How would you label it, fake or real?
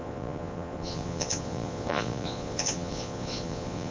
fake